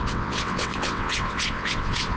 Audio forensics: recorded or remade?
remade